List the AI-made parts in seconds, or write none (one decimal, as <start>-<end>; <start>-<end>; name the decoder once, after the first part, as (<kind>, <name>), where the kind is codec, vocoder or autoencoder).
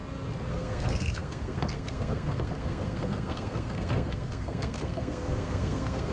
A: 0.5-6.1 (codec, SNAC)